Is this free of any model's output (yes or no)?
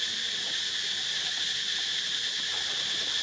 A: yes